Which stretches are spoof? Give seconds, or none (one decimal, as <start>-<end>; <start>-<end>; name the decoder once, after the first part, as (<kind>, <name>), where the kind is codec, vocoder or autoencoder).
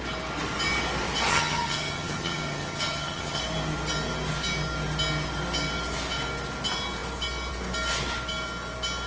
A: 1.3-3.4 (vocoder, HiFi-GAN)